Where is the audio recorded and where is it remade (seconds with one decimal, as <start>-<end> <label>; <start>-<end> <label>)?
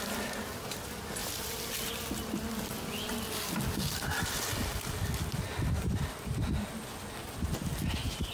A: 0.0-8.3 recorded